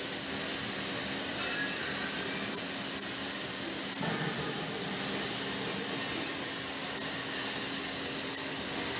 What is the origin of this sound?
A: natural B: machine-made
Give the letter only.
A